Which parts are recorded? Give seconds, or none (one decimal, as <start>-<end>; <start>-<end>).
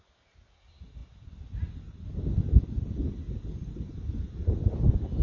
0.0-5.2